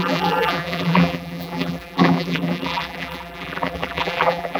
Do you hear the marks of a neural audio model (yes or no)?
yes